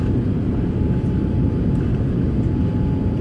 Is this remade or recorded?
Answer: recorded